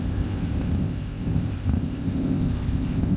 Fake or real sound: fake